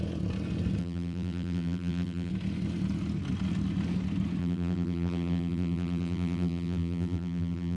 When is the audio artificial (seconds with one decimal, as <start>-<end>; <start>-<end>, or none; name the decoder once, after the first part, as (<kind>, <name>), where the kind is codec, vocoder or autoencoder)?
0.8-2.3 (vocoder, BigVGAN v2); 4.4-7.8